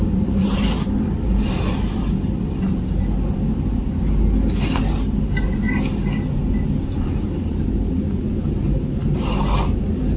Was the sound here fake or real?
real